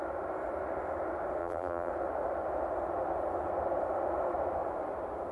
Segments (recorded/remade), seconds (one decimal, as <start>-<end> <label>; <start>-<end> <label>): 0.0-1.4 recorded; 1.4-1.9 remade; 1.9-5.3 recorded